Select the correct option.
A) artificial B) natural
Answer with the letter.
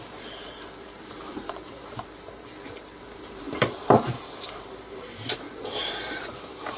A